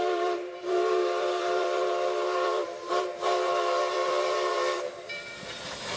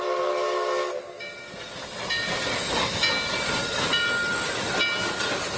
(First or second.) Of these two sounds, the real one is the second